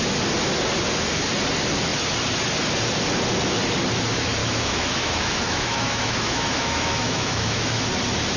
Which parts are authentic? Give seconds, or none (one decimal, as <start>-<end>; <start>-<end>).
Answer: 0.0-4.4; 7.9-8.4